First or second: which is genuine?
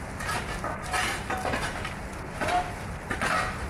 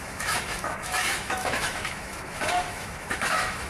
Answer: first